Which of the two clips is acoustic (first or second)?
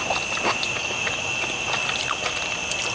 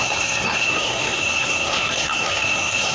first